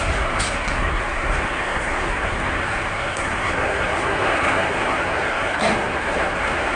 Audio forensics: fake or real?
fake